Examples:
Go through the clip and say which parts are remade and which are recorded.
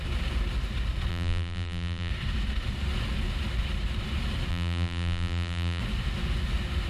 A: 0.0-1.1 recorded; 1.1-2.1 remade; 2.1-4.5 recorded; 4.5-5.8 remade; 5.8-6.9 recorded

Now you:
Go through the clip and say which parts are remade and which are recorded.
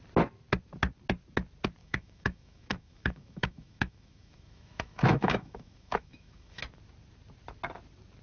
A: 0.0-1.8 recorded; 1.8-6.6 remade; 6.6-8.2 recorded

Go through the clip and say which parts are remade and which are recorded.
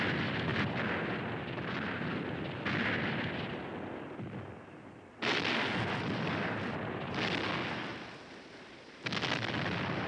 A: 0.0-10.1 recorded